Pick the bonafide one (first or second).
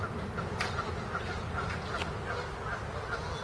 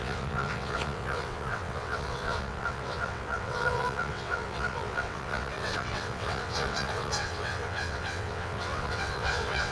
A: first